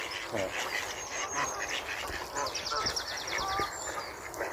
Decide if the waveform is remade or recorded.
recorded